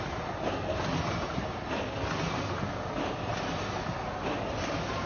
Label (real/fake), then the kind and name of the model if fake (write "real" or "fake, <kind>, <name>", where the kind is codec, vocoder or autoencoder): real